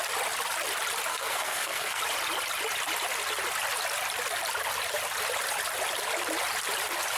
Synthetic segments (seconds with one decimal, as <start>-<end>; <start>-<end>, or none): 1.1-2.0